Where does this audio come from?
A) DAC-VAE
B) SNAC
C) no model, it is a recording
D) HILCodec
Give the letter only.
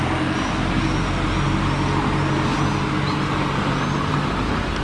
C